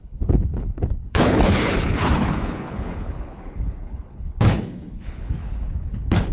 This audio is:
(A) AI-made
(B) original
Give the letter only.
A